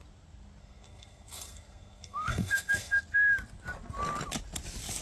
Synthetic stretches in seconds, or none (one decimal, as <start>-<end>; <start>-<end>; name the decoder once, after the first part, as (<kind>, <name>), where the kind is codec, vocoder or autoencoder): 0.6-3.0 (codec, SNAC)